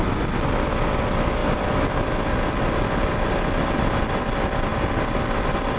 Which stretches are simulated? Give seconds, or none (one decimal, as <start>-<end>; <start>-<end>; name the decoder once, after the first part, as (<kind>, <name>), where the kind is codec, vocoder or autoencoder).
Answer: none